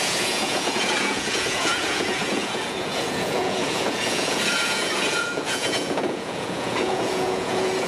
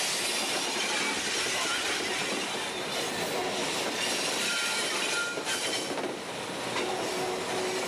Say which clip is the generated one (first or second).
first